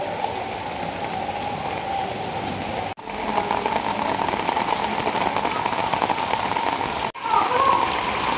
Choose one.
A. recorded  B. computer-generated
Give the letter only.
A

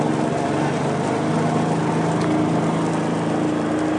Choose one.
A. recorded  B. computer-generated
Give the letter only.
A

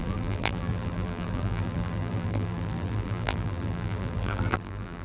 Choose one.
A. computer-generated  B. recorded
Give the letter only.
A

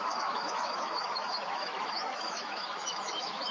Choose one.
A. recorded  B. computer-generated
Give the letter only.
B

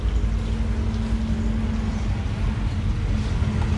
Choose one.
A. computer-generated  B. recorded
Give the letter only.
B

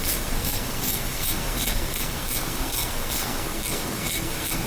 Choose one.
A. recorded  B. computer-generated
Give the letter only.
B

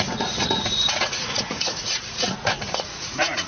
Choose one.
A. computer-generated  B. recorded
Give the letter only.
A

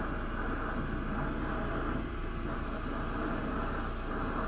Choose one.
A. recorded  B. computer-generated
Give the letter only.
A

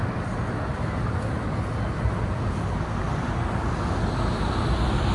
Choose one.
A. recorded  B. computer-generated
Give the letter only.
A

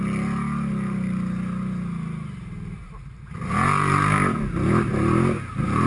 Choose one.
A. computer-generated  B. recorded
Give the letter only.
B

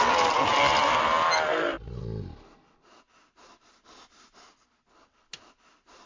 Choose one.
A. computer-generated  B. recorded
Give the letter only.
B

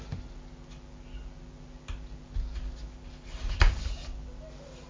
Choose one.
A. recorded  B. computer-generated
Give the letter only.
A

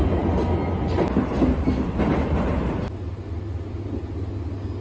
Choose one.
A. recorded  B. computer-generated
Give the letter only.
A